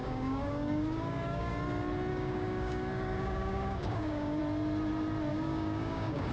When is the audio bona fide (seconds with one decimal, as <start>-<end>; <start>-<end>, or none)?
1.5-2.1; 4.4-5.3